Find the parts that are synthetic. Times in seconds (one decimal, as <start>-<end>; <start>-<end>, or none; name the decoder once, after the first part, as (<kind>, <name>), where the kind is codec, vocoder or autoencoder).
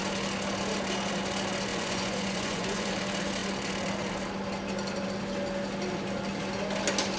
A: 1.7-2.9 (vocoder, Vocos)